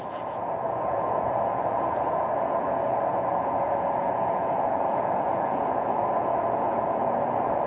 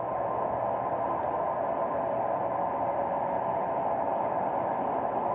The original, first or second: second